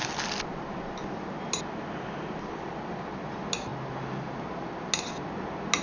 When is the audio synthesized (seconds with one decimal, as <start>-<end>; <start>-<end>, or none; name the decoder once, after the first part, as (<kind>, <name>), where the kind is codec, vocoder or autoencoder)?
0.0-0.7 (vocoder, BigVGAN v2)